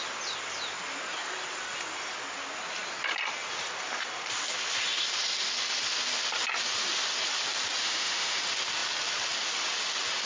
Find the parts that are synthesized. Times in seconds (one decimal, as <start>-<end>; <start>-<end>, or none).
7.8-8.4